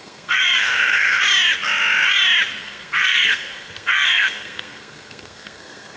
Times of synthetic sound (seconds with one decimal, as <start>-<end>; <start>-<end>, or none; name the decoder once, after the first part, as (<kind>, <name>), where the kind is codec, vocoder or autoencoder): 0.0-1.2 (codec, SNAC); 2.6-6.0